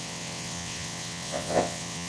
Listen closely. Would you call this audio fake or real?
fake